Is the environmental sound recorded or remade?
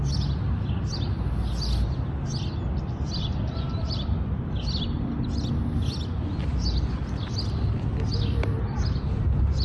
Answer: recorded